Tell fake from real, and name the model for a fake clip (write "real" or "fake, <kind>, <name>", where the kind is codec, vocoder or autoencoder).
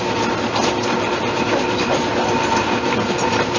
real